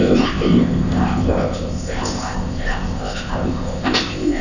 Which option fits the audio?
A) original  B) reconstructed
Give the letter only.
B